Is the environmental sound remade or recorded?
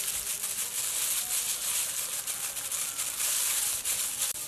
recorded